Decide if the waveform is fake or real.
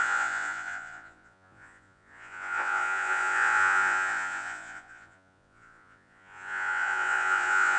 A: fake